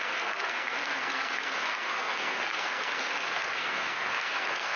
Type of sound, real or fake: fake